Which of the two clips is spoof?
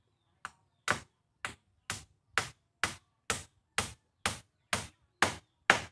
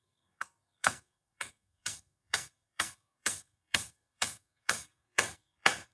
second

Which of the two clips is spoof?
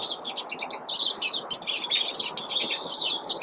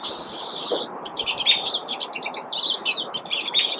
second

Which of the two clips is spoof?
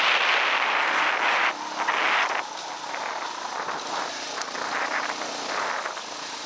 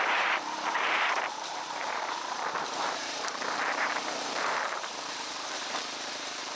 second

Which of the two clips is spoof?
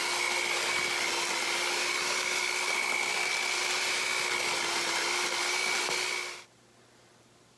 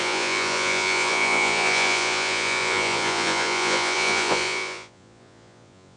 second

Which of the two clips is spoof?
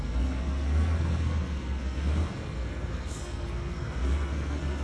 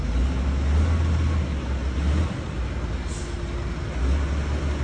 first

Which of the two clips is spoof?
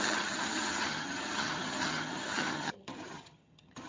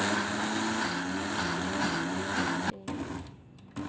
first